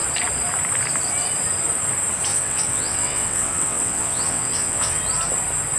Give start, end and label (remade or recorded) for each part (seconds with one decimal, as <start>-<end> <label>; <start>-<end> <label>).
0.0-2.3 recorded; 2.3-5.0 remade; 5.0-5.8 recorded